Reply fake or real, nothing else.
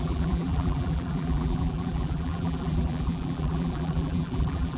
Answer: fake